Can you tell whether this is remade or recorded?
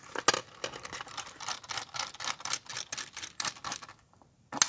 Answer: recorded